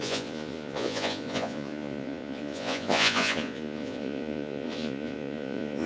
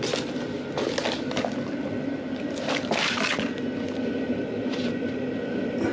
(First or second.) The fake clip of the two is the first